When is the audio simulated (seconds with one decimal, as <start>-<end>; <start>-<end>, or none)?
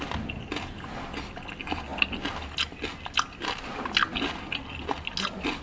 none